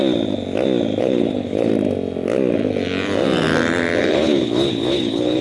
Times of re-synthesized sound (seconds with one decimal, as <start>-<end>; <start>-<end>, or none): 1.0-1.7; 4.0-5.4